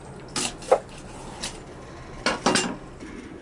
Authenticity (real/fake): real